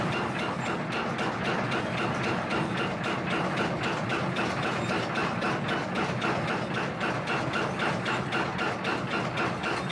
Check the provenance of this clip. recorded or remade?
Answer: recorded